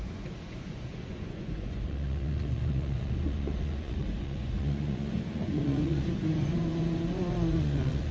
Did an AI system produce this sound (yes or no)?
yes